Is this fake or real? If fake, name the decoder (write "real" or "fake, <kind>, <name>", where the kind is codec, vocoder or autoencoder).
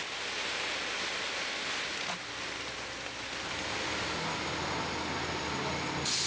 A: real